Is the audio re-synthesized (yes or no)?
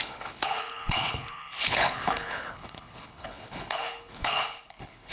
yes